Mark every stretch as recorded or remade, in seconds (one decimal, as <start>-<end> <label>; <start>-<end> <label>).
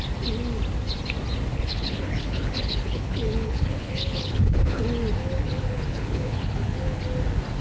0.0-1.5 recorded; 1.5-4.8 remade; 4.8-5.2 recorded; 5.2-7.0 remade; 7.0-7.6 recorded